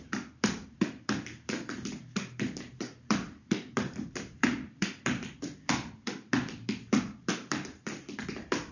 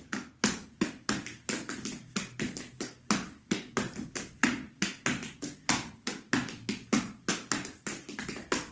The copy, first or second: first